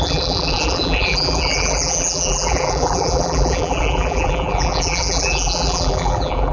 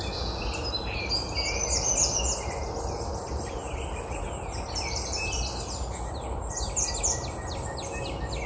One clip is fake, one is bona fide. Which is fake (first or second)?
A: first